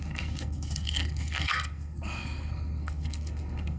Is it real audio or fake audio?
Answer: fake